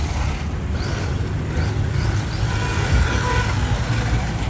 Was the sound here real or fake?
real